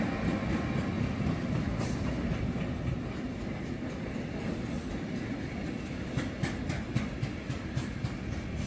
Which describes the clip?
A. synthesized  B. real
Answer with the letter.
B